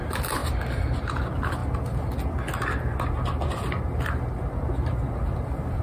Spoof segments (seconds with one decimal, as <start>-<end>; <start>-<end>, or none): none